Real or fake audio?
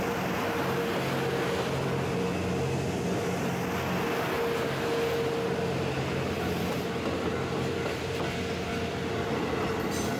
real